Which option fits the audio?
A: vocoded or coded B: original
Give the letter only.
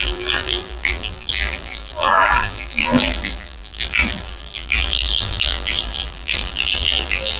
A